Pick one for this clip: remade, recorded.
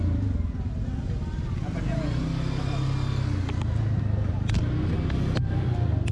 recorded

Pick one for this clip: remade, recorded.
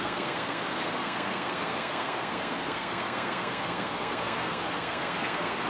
remade